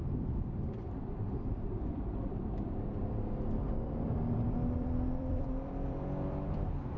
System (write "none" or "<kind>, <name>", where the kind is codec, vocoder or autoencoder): vocoder, BigVGAN v2